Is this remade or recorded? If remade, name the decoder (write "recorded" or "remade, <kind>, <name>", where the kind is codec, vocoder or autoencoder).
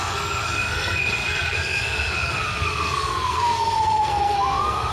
remade, codec, SNAC